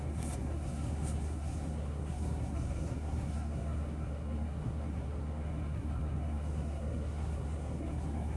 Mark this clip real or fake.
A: fake